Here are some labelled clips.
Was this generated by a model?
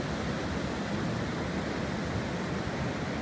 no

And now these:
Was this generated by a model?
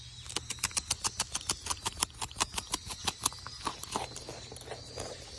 no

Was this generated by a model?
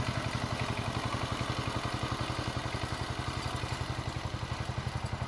no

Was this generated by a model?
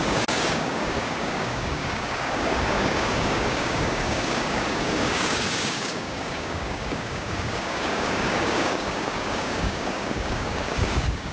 yes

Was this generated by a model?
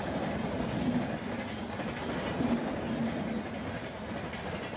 no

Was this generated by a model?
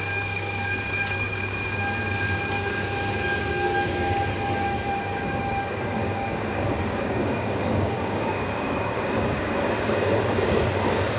yes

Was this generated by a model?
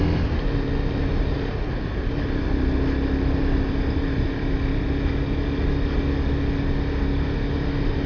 no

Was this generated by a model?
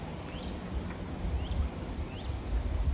no